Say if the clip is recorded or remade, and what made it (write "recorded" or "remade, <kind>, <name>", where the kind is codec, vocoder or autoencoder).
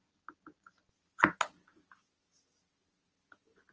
recorded